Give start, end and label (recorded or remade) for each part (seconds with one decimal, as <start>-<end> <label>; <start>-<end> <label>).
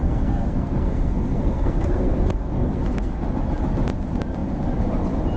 0.0-3.2 remade; 3.2-5.4 recorded